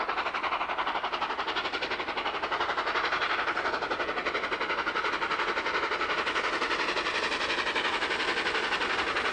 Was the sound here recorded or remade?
recorded